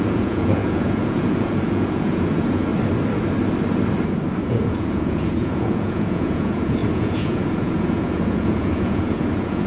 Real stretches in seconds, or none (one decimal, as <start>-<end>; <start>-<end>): 2.7-4.4